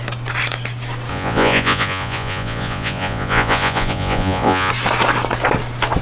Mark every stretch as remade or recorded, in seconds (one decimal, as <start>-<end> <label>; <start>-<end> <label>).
0.0-1.1 recorded; 1.1-4.7 remade; 4.7-6.0 recorded